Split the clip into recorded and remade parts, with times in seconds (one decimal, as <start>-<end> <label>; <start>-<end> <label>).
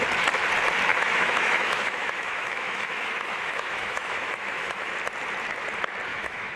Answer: 0.0-0.9 recorded; 0.9-4.9 remade; 4.9-6.1 recorded; 6.1-6.6 remade